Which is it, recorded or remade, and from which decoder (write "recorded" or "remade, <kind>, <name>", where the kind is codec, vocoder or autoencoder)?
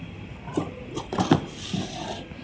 recorded